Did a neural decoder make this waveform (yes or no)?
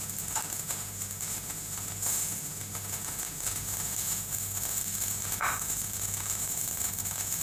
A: yes